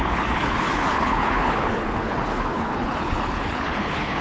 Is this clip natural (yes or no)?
no